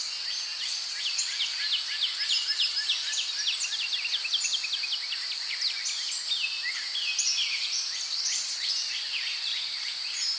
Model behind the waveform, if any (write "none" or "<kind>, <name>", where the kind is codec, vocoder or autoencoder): none